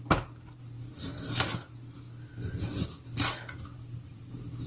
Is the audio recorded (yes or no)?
yes